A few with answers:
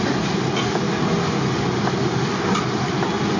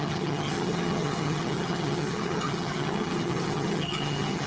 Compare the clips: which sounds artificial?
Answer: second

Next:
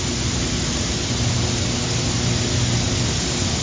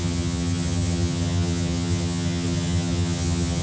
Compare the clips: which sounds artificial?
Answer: second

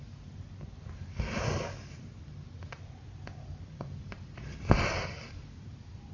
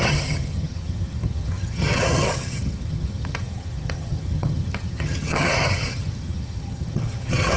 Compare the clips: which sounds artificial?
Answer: second